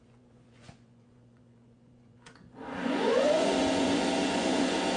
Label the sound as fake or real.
fake